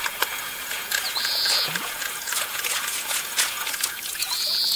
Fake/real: fake